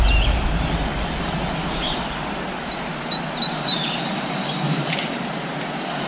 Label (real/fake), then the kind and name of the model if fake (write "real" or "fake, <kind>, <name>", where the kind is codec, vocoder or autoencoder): real